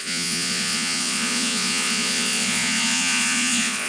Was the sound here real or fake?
fake